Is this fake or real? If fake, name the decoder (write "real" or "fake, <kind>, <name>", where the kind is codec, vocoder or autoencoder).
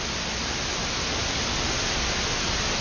real